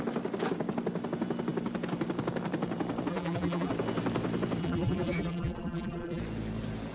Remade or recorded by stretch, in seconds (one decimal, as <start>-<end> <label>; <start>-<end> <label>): 0.0-3.1 recorded; 3.1-3.7 remade; 3.7-4.6 recorded; 4.6-6.2 remade; 6.2-6.9 recorded